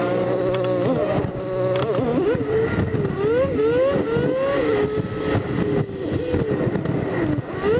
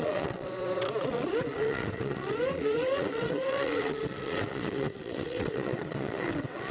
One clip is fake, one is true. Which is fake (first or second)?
second